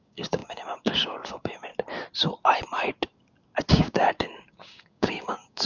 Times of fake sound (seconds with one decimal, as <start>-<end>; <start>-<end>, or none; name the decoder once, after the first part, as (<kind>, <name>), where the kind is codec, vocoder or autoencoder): 0.0-1.7 (codec, DAC); 3.7-5.7